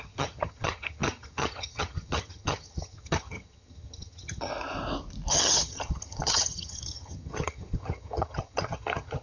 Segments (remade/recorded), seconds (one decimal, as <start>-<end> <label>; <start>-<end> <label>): 0.0-4.5 remade; 4.5-5.3 recorded; 5.3-9.2 remade